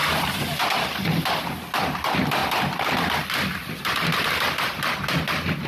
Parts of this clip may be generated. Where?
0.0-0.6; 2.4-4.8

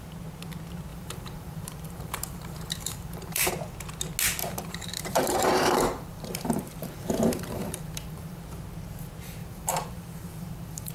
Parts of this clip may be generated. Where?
0.9-3.5; 4.4-8.4; 9.4-10.9

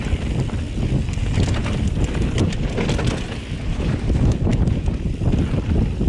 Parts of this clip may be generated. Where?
none

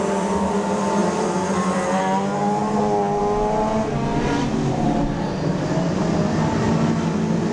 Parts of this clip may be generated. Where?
1.0-2.0

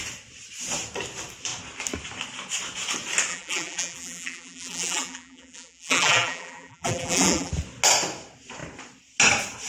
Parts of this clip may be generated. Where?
3.3-7.5

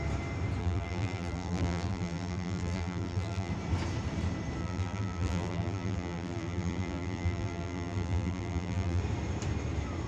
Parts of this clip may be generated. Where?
0.6-3.5; 4.6-9.0